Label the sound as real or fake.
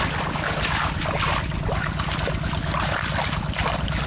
real